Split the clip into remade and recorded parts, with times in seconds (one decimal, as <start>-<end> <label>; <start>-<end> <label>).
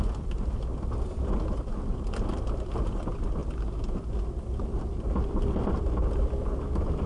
0.0-7.1 recorded